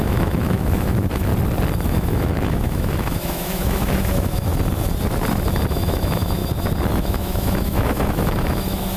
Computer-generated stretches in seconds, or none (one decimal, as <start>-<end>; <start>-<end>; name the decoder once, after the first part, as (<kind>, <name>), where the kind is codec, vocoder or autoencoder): 0.0-1.3 (autoencoder, DAC-VAE); 1.9-4.5; 5.7-6.4; 7.0-9.0